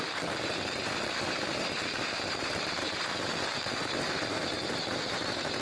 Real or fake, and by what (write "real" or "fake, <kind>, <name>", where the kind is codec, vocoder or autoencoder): fake, vocoder, BigVGAN v2